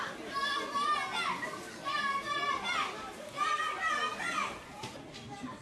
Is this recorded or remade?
recorded